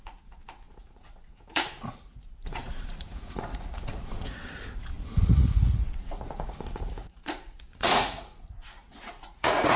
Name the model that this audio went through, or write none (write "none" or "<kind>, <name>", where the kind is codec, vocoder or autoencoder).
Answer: vocoder, Vocos